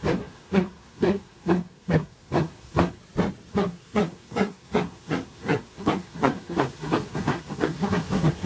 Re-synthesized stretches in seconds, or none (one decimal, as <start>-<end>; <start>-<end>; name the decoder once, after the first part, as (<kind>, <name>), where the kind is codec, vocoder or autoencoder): 0.0-3.0 (codec, SNAC); 3.5-8.5